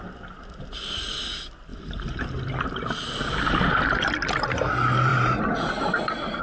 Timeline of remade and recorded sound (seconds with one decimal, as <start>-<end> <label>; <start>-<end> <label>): 0.0-5.1 recorded; 5.1-6.4 remade